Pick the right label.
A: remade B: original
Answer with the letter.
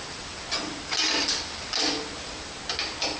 B